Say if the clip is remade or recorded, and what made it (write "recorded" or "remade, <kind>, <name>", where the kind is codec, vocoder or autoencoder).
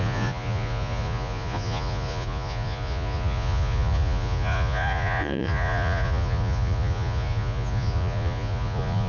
remade, vocoder, Vocos